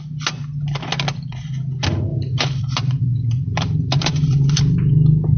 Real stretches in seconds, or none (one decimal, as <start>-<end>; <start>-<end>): 0.0-2.1; 4.6-5.4